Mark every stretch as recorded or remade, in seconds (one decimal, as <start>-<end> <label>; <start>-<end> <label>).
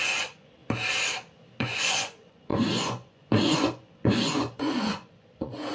0.0-0.6 remade; 0.6-1.6 recorded; 1.6-5.7 remade